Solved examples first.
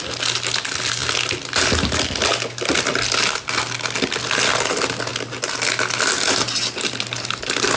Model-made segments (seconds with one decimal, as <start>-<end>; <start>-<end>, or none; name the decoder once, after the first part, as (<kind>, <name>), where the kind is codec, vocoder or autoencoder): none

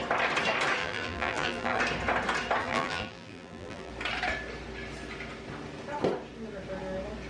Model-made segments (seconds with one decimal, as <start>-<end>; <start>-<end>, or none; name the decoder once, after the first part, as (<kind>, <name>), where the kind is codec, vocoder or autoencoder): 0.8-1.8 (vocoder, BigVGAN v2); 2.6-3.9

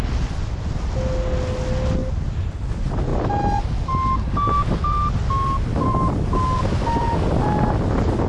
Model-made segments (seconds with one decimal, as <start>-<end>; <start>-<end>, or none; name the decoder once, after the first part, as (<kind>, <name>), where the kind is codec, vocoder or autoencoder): 2.0-2.5 (vocoder, BigVGAN v2)

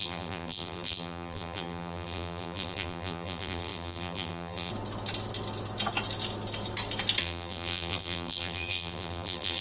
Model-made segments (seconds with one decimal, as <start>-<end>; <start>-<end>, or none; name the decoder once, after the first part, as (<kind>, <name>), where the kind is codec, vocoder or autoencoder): 0.0-4.7 (vocoder, BigVGAN v2); 7.2-9.6

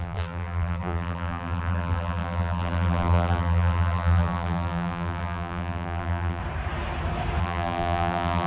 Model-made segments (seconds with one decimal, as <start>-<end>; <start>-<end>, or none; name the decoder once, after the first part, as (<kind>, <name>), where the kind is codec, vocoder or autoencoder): 0.0-6.4 (vocoder, BigVGAN v2); 7.4-8.5